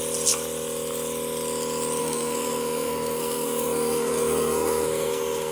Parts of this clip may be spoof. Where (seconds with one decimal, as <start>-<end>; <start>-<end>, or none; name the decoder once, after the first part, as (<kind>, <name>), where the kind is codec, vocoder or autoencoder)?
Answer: 2.0-5.5 (codec, SNAC)